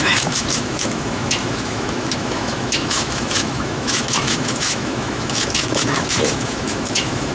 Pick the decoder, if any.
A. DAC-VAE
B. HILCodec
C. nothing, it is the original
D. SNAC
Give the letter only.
A